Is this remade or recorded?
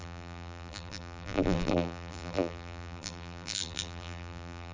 remade